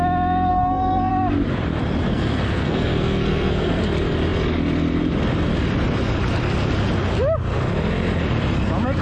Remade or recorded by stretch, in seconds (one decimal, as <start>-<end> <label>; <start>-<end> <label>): 0.0-0.5 recorded; 0.5-1.1 remade; 1.1-2.1 recorded; 2.1-3.8 remade; 3.8-9.0 recorded